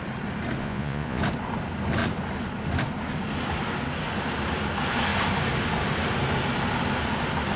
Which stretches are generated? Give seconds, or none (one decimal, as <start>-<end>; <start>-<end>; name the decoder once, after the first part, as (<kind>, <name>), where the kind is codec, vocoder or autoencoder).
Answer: 0.6-1.2 (vocoder, Vocos)